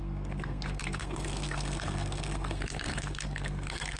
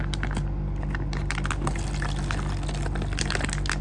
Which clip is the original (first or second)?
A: second